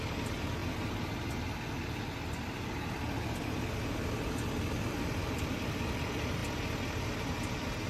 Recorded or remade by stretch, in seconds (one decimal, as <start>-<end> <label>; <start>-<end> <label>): 0.0-7.9 recorded